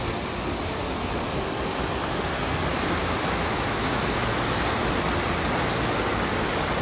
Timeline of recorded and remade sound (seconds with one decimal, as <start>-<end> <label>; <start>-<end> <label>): 0.0-3.0 recorded; 3.0-4.0 remade; 4.0-6.8 recorded